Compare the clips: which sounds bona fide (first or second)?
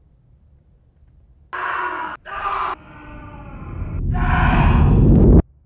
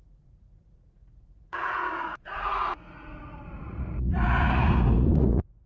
first